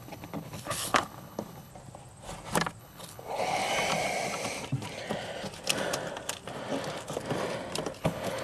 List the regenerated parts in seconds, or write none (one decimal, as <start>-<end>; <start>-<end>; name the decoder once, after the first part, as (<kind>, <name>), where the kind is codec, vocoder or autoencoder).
0.0-1.7 (codec, HILCodec); 2.8-3.6; 8.0-8.4